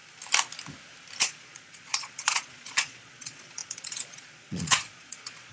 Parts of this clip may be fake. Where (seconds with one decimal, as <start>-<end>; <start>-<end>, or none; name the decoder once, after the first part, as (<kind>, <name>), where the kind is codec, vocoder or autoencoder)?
1.2-5.5 (vocoder, Vocos)